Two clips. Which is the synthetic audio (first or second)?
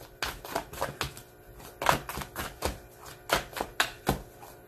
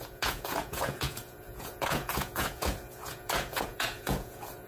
second